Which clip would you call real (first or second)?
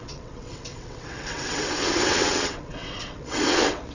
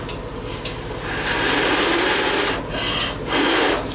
second